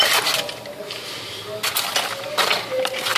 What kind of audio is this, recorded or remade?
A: recorded